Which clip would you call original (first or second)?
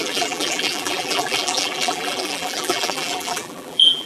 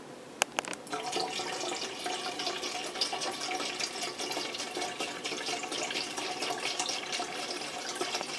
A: second